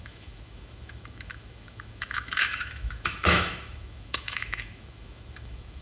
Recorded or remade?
remade